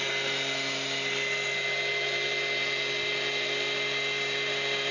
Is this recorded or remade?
recorded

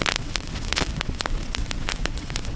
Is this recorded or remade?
remade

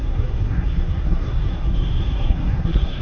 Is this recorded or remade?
remade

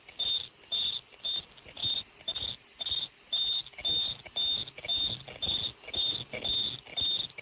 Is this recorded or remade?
recorded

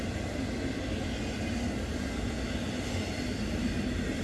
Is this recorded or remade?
recorded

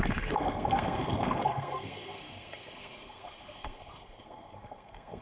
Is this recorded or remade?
remade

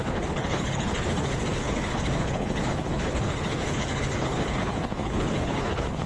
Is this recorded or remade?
remade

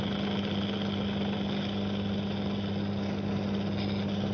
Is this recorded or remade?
recorded